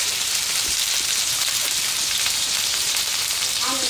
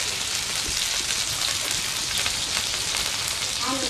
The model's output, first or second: first